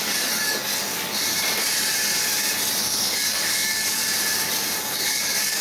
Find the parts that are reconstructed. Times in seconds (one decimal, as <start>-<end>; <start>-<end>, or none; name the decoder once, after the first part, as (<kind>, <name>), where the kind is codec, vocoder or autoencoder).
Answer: 0.0-0.7 (codec, DAC); 2.8-4.0; 4.8-5.6